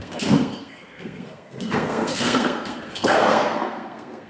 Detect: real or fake fake